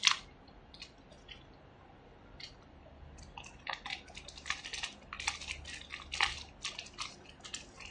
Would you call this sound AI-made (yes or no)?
no